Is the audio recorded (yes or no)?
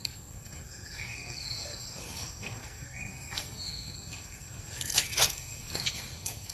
no